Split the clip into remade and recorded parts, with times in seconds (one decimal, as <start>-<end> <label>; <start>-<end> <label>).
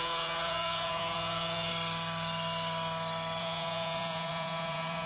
0.0-1.7 remade; 1.7-3.4 recorded; 3.4-5.1 remade